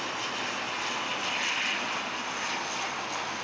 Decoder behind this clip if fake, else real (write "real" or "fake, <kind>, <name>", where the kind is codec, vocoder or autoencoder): real